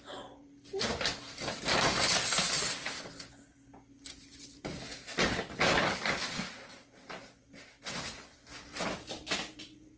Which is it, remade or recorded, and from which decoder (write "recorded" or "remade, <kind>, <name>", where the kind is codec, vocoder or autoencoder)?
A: recorded